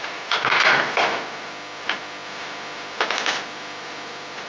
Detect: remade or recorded recorded